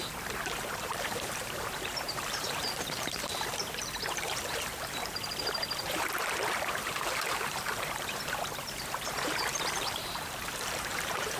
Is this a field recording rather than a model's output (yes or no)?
no